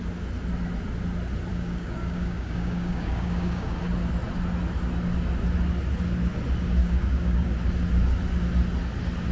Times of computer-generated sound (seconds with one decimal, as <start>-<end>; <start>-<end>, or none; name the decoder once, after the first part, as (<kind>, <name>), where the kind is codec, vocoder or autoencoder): 1.5-3.8 (codec, DAC); 6.8-7.5